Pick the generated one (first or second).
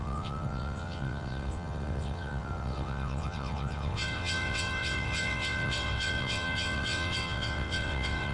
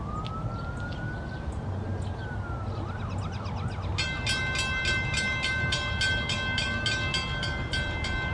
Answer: first